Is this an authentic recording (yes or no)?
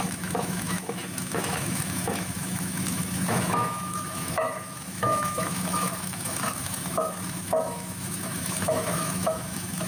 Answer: no